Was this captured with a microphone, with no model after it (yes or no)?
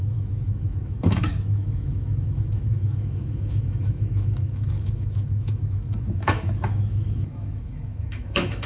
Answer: no